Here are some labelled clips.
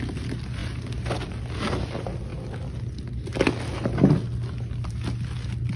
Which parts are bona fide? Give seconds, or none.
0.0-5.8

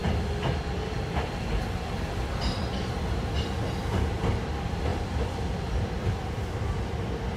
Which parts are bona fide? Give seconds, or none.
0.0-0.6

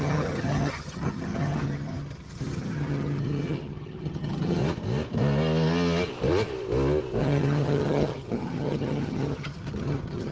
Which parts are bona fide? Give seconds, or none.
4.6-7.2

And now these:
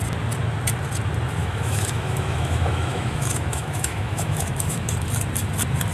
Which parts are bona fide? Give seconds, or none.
0.0-1.4; 4.9-5.9

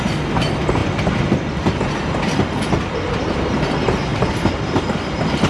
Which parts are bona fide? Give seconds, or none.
0.0-4.1; 4.7-5.5

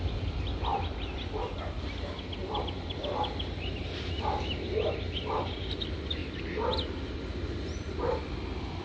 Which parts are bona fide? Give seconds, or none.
0.0-0.7; 1.6-2.4; 3.0-8.8